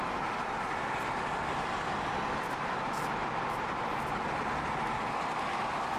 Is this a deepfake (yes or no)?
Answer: no